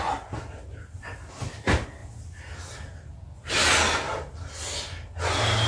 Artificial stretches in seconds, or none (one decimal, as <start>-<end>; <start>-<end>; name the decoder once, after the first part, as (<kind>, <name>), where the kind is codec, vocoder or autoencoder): none